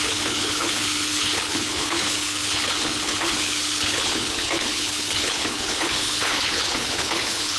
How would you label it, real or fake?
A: fake